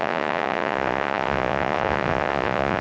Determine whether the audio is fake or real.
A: fake